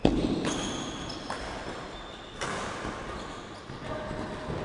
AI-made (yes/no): no